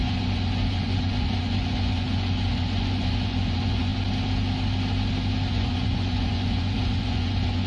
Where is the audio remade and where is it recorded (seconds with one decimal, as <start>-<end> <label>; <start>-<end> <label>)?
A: 0.0-3.9 remade; 3.9-5.5 recorded; 5.5-7.7 remade